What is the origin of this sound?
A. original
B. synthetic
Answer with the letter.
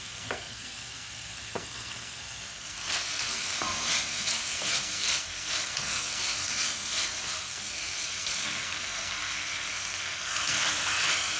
B